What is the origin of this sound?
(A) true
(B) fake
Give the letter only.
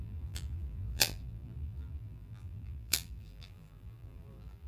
B